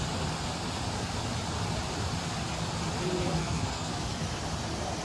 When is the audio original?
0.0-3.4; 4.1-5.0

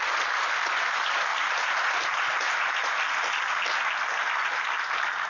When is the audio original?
0.0-1.3; 2.1-5.3

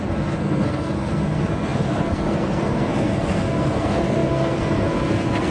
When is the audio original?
none

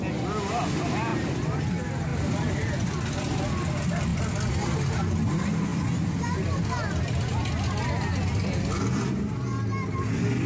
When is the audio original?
0.0-2.1; 2.9-10.5

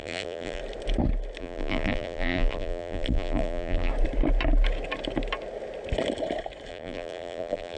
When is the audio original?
0.6-1.4; 3.9-6.7

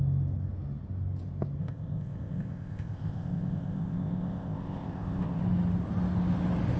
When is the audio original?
0.0-1.6; 5.4-6.8

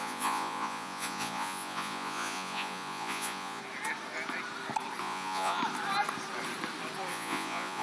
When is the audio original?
3.6-5.0; 5.6-7.1

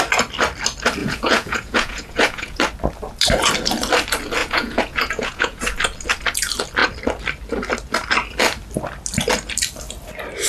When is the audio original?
0.0-1.0; 2.6-4.4; 5.6-10.5